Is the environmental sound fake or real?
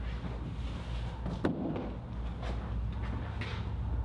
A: real